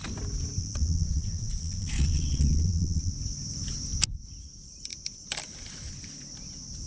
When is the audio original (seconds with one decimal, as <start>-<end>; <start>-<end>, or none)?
0.0-0.6; 3.1-6.9